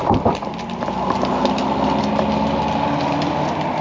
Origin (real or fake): real